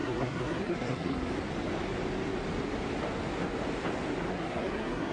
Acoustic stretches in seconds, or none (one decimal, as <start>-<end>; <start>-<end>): 1.3-4.3